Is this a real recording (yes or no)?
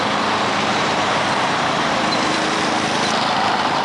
no